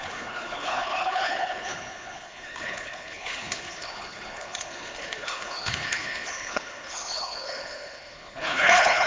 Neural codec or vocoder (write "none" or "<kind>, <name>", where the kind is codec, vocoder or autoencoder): codec, HILCodec